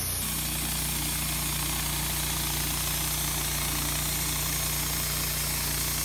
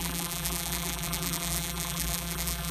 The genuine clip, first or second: first